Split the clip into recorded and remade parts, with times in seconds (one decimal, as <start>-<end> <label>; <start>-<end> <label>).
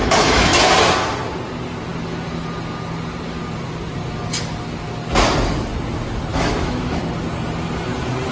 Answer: 0.0-0.7 remade; 0.7-6.3 recorded; 6.3-7.0 remade; 7.0-8.3 recorded